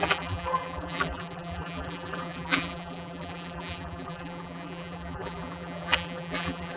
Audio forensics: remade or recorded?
remade